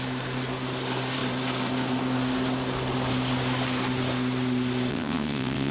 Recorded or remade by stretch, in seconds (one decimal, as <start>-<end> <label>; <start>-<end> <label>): 0.0-4.9 recorded; 4.9-5.7 remade